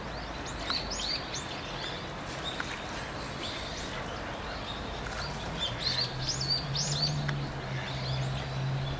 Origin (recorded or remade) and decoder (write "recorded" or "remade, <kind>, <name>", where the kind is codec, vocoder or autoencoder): recorded